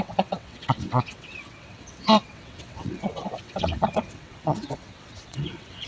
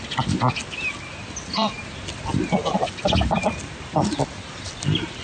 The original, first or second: second